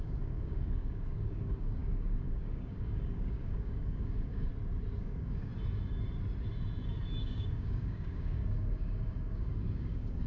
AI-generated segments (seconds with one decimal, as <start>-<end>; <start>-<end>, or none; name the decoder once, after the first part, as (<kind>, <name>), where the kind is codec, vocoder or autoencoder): 0.0-4.5 (codec, DAC); 5.0-5.5; 7.2-10.3